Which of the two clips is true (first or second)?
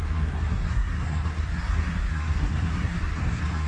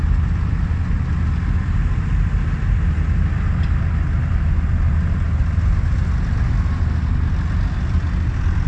second